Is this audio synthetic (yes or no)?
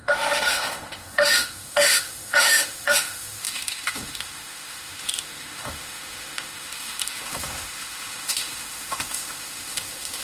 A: yes